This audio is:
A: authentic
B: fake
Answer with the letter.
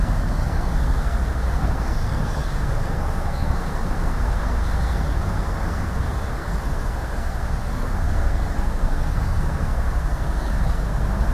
B